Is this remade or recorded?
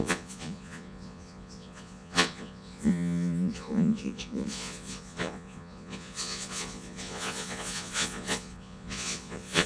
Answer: remade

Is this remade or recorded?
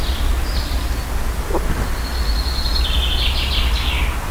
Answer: recorded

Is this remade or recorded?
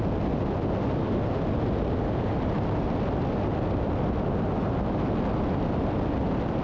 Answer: recorded